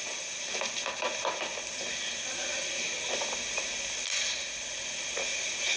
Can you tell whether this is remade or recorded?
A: recorded